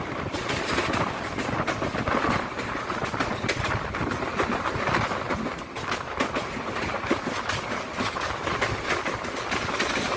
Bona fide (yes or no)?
yes